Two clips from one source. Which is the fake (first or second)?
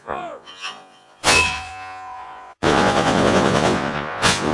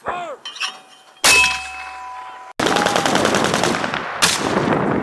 first